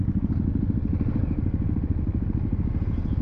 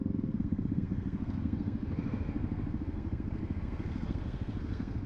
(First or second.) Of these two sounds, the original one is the first